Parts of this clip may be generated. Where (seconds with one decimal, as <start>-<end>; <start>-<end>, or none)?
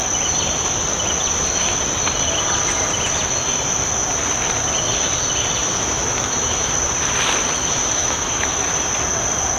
5.6-6.7; 7.6-8.7